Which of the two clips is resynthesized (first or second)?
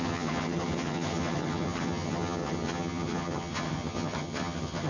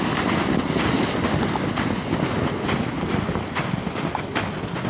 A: first